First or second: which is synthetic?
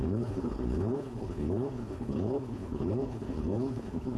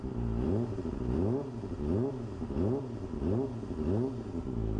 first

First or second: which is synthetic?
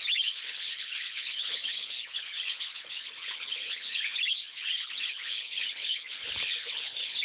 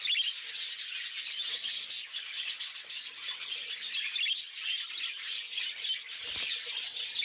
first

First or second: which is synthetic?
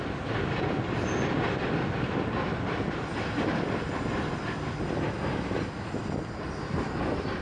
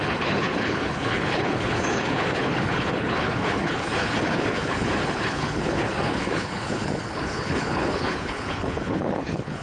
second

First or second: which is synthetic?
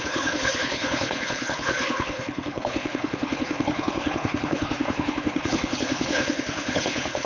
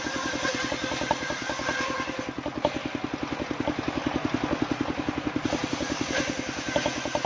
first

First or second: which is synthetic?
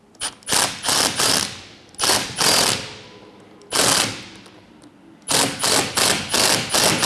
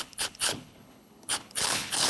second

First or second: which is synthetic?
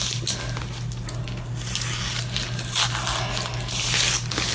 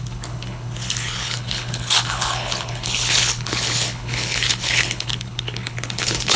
second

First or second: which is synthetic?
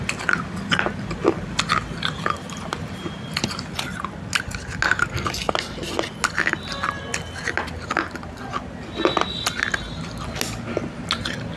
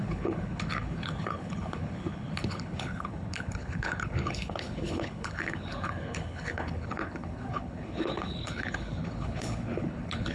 second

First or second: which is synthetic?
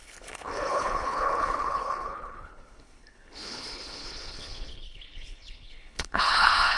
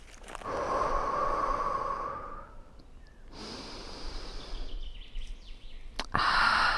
first